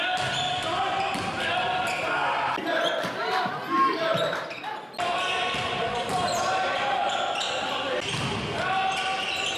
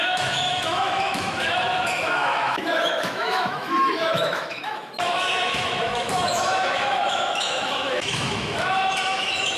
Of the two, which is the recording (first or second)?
first